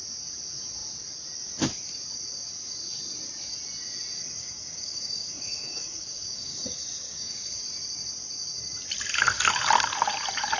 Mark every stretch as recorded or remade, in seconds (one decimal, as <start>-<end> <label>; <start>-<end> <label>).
0.0-4.4 recorded; 4.4-7.6 remade; 7.6-10.6 recorded